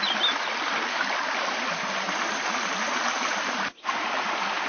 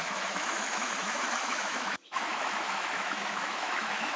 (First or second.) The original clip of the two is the first